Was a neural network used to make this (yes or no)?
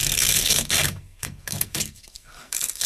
yes